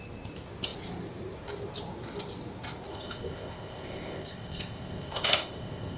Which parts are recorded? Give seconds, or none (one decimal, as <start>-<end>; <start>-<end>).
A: 0.0-2.9